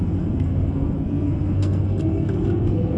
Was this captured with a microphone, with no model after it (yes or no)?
no